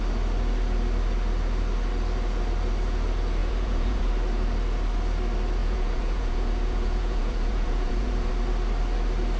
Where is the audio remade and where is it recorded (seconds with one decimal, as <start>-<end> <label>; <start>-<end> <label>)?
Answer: 0.0-3.4 recorded; 3.4-4.1 remade; 4.1-5.6 recorded; 5.6-8.3 remade; 8.3-9.4 recorded